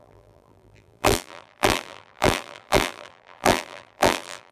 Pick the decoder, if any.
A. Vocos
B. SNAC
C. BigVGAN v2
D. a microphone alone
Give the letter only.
C